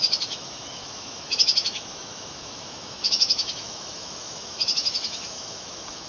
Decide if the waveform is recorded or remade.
remade